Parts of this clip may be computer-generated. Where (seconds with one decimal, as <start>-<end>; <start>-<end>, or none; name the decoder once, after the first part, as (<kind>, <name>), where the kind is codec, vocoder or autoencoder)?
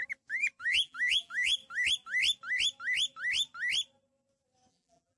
0.6-1.6 (vocoder, BigVGAN v2); 4.7-5.2